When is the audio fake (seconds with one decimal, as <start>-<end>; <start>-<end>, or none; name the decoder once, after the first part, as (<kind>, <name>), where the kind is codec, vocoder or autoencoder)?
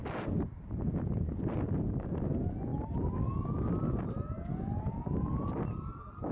none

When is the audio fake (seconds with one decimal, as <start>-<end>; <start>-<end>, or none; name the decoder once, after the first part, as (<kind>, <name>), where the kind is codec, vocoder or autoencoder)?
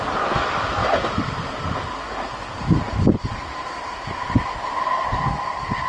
none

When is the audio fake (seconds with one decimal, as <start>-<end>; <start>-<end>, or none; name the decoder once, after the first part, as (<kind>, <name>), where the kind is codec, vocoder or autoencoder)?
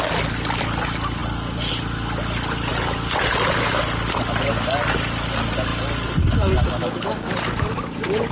none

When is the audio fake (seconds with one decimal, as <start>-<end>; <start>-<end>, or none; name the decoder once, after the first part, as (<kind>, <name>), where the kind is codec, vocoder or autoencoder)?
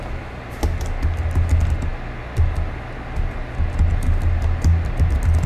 none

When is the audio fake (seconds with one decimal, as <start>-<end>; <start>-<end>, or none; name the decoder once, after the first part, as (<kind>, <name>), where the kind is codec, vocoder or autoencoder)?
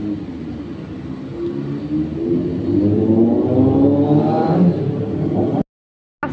none